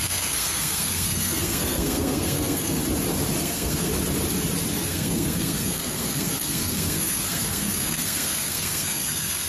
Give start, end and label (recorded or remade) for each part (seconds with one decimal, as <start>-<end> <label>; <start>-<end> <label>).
0.0-2.8 remade; 2.8-3.4 recorded; 3.4-3.9 remade; 3.9-4.7 recorded; 4.7-9.5 remade